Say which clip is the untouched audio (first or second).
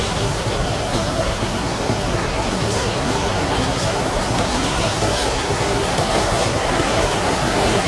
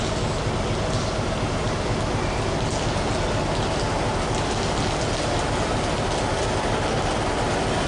second